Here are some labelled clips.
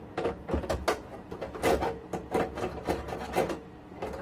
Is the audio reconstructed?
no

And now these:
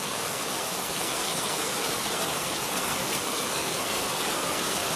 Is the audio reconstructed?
yes